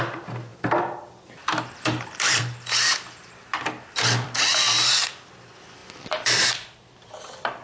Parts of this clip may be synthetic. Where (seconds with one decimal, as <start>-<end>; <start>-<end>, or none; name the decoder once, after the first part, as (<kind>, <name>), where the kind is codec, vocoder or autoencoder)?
0.0-7.6 (vocoder, BigVGAN v2)